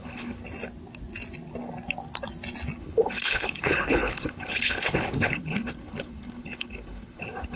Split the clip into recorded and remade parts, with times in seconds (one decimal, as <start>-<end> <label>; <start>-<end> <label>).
0.0-0.4 remade; 0.4-2.8 recorded; 2.8-7.6 remade